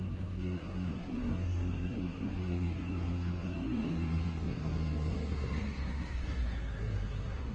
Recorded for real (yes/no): no